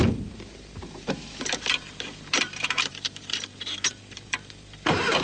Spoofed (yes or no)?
yes